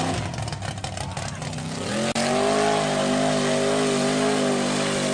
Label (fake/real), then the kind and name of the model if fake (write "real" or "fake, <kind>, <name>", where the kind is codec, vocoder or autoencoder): real